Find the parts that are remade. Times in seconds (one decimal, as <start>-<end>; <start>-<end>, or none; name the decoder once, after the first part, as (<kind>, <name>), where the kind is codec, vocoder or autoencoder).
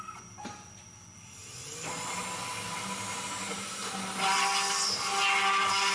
none